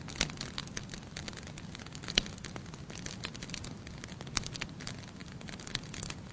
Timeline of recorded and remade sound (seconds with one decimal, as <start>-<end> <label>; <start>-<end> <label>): 0.0-5.2 recorded; 5.2-6.3 remade